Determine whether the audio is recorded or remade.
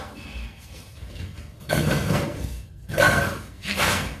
remade